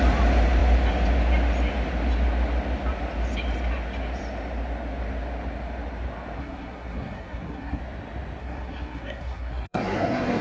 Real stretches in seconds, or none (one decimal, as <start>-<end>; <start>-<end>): 0.0-6.4; 7.8-8.4